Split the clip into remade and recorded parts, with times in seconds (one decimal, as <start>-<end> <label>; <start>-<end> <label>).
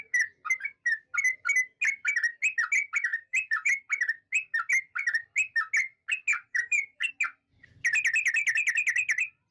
0.0-3.1 recorded; 3.1-3.8 remade; 3.8-6.3 recorded; 6.3-7.1 remade; 7.1-9.5 recorded